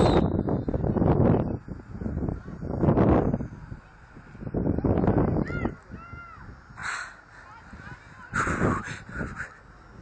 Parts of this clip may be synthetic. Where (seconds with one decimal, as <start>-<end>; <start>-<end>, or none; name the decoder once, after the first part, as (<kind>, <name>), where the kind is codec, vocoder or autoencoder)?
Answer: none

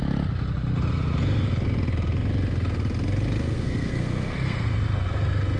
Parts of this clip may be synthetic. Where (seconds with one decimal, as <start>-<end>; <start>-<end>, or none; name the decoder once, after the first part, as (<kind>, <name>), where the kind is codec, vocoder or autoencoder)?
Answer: 3.4-4.7 (codec, SNAC)

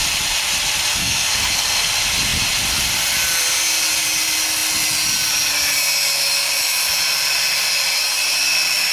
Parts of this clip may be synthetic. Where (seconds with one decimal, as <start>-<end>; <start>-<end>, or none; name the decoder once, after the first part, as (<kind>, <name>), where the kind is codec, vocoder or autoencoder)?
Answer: 0.9-1.9 (codec, SNAC)

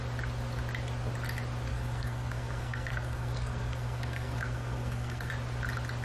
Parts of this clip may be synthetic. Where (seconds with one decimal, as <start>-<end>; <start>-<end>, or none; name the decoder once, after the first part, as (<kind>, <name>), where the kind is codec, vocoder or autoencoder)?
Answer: 1.7-5.3 (codec, SNAC)

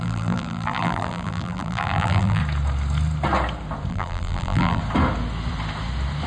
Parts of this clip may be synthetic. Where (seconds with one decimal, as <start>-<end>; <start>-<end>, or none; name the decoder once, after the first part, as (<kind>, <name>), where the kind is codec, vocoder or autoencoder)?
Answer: 0.0-2.4 (vocoder, BigVGAN v2); 3.9-4.8

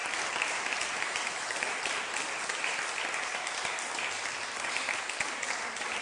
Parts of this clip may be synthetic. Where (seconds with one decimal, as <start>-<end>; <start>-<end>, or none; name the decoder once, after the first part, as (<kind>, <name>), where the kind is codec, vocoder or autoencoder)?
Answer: 0.0-1.9 (vocoder, BigVGAN v2)